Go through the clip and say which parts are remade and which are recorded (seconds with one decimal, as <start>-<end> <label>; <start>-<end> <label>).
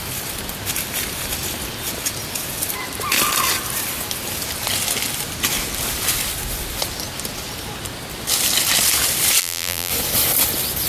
0.0-9.4 recorded; 9.4-9.9 remade; 9.9-10.9 recorded